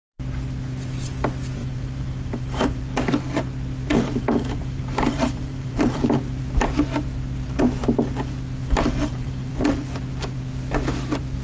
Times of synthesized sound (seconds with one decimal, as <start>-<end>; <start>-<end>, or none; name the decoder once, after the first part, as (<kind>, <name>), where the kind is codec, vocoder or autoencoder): 1.6-2.8 (vocoder, BigVGAN v2); 3.9-6.0; 8.6-9.5